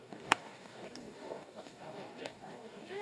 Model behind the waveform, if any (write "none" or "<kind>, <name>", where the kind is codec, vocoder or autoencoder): codec, DAC